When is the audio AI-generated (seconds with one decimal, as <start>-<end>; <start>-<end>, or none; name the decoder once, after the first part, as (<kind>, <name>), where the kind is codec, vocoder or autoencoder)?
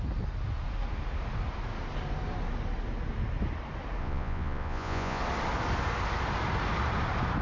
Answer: 4.0-5.2 (vocoder, Vocos)